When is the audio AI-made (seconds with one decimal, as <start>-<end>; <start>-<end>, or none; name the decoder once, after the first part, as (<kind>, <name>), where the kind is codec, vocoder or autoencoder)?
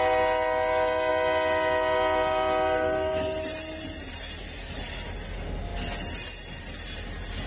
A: none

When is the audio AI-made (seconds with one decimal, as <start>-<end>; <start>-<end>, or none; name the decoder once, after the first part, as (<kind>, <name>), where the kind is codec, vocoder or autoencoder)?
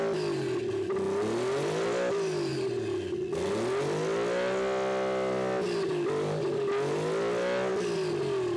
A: none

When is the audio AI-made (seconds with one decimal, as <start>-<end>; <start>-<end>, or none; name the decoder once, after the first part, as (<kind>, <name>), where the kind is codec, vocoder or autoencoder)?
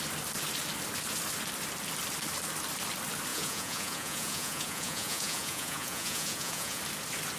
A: 3.3-6.8 (vocoder, Vocos)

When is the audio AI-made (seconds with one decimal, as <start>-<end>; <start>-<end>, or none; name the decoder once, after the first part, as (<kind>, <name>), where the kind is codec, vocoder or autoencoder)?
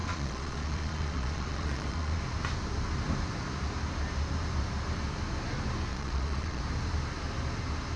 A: 0.0-2.2 (vocoder, Vocos); 5.9-6.6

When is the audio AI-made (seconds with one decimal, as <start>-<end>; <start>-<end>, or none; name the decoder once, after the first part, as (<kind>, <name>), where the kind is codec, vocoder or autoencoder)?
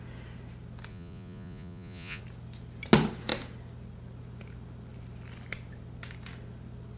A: 0.9-2.2 (vocoder, Vocos)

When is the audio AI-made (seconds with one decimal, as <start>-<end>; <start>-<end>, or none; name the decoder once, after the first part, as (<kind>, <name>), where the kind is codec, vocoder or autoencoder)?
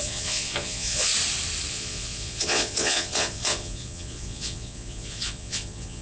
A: 0.0-1.1 (vocoder, Vocos); 1.7-6.0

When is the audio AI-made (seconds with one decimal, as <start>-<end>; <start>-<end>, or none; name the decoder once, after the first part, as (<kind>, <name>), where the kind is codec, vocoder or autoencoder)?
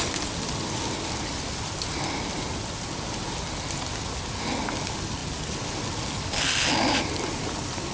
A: none